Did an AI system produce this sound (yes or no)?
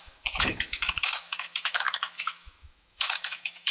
yes